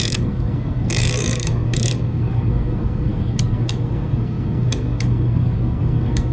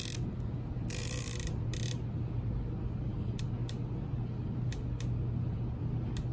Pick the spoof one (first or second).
first